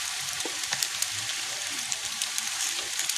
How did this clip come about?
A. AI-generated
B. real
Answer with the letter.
A